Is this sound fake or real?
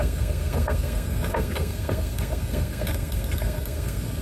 fake